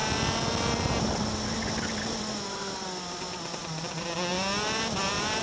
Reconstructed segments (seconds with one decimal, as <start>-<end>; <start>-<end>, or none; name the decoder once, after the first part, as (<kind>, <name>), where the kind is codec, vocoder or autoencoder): none